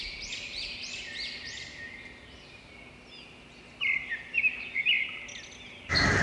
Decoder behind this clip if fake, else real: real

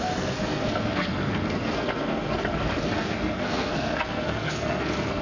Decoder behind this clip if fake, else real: fake, codec, SNAC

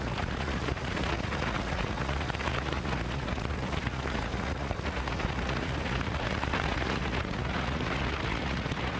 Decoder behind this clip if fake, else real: fake, vocoder, Vocos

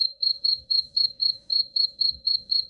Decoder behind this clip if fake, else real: fake, autoencoder, DAC-VAE